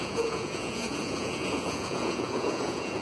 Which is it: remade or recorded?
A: remade